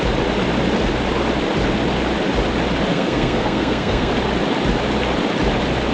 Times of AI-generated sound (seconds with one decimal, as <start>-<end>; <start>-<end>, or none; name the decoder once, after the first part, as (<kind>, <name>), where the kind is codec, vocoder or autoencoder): 2.9-4.1 (codec, SNAC)